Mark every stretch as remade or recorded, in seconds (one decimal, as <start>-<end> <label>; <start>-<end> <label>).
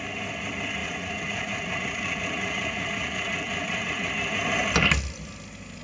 0.0-0.8 recorded; 0.8-4.1 remade; 4.1-5.8 recorded